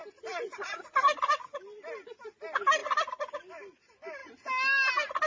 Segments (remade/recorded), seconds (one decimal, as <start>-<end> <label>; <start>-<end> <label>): 0.0-5.3 recorded